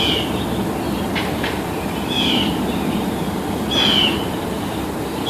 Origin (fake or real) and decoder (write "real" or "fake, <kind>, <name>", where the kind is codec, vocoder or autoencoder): real